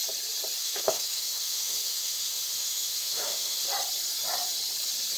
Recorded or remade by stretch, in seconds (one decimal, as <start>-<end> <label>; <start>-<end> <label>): 0.0-0.6 recorded; 0.6-3.7 remade; 3.7-5.2 recorded